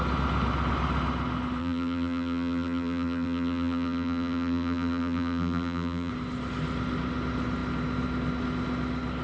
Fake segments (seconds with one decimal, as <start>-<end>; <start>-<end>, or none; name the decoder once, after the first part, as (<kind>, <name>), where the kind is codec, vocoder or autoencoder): 1.6-6.1 (vocoder, BigVGAN v2)